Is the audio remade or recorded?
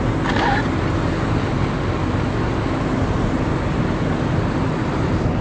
recorded